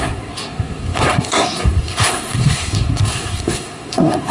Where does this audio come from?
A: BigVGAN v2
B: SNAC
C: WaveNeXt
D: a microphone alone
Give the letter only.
B